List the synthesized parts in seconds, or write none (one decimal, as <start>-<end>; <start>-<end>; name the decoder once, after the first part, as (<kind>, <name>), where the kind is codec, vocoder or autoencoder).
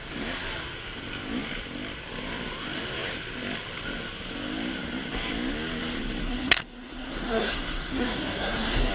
6.2-8.9 (codec, SNAC)